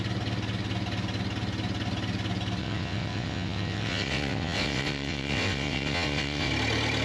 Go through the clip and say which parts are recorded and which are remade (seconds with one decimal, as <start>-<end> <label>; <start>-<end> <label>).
0.0-2.6 recorded; 2.6-6.5 remade; 6.5-7.0 recorded